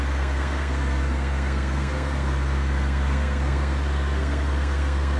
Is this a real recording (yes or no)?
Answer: no